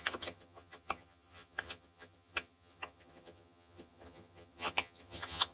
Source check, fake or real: fake